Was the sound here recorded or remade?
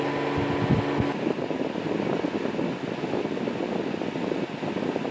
recorded